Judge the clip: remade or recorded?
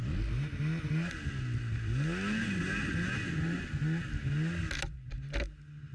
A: recorded